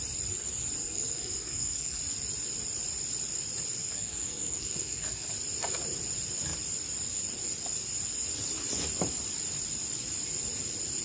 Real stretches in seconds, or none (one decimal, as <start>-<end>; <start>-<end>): 0.0-0.8; 2.0-3.8; 5.3-11.0